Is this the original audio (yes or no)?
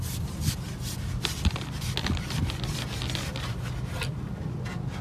yes